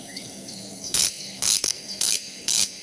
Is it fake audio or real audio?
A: fake